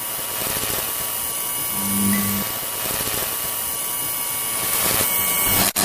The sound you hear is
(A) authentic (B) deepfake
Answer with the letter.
A